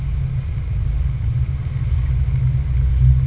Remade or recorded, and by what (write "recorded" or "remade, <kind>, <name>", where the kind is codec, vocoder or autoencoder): recorded